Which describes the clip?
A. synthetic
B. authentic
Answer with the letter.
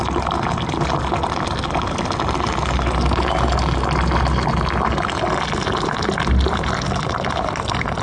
B